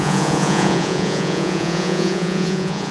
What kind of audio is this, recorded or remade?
remade